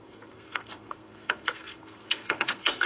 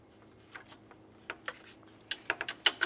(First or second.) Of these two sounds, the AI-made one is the first